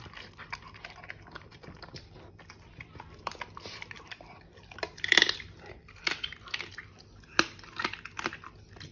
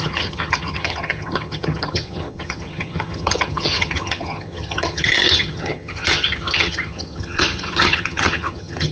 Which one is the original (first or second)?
first